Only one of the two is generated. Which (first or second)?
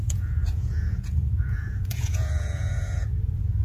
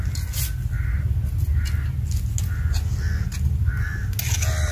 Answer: first